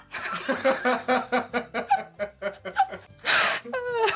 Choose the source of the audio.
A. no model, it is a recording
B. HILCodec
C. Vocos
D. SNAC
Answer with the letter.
A